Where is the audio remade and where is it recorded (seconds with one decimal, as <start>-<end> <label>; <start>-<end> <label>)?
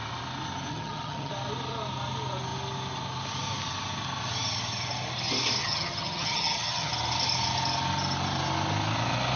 0.0-0.7 recorded; 0.7-1.3 remade; 1.3-5.6 recorded; 5.6-6.9 remade; 6.9-9.4 recorded